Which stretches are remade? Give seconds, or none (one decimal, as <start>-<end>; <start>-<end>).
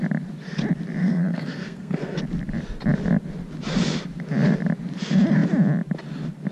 1.0-2.2